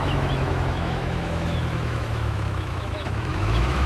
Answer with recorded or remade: remade